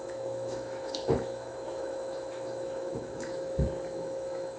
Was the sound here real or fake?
fake